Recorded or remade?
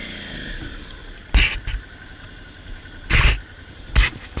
recorded